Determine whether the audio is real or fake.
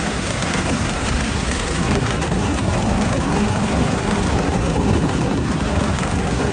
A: fake